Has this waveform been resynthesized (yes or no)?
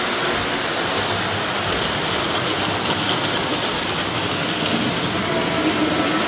no